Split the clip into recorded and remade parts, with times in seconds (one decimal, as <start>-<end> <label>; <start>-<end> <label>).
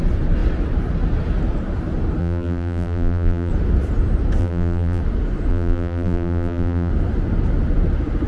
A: 0.0-2.2 recorded; 2.2-3.5 remade; 3.5-4.4 recorded; 4.4-5.0 remade; 5.0-5.5 recorded; 5.5-6.9 remade; 6.9-8.3 recorded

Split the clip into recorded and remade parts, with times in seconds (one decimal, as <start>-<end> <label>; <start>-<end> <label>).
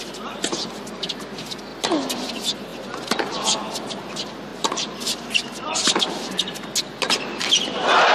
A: 0.0-4.5 recorded; 4.5-6.6 remade; 6.6-8.1 recorded